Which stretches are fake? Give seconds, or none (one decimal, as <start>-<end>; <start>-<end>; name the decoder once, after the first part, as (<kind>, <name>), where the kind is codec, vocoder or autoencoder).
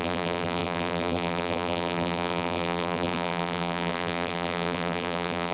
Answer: 0.0-5.5 (vocoder, BigVGAN v2)